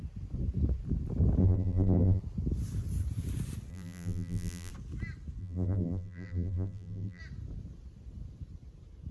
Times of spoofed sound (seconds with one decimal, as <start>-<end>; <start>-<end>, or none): 1.4-2.2; 3.7-4.7; 5.4-7.2